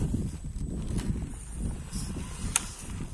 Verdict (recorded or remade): recorded